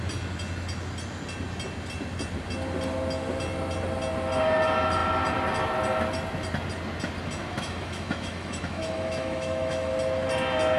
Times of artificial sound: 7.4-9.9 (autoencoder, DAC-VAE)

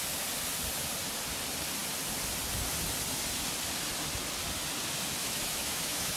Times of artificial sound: 5.2-6.2 (autoencoder, DAC-VAE)

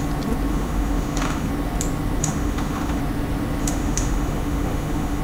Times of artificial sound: 0.5-1.5 (autoencoder, DAC-VAE); 2.2-3.0; 3.6-5.2

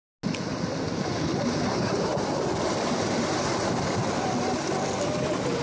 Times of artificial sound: none